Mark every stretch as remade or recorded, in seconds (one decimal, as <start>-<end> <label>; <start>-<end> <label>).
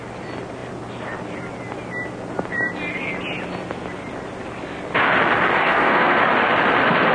0.0-5.6 recorded; 5.6-6.2 remade; 6.2-7.1 recorded